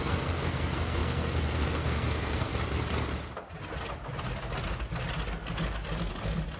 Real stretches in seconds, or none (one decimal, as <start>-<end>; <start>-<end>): 2.5-6.6

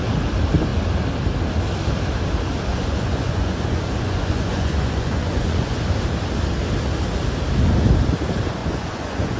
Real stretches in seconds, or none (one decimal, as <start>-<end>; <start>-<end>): 0.0-2.7; 5.8-8.6

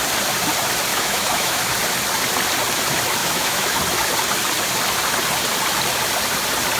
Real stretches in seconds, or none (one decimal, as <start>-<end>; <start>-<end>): 0.0-0.9; 1.6-3.2; 3.8-6.8

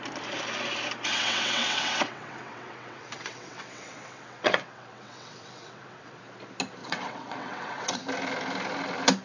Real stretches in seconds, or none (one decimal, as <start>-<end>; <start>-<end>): 0.0-1.1; 6.2-6.8; 8.0-9.2